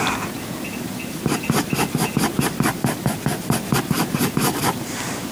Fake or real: real